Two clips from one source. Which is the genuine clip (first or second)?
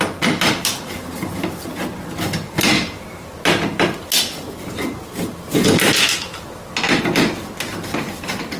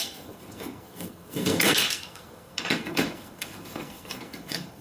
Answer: first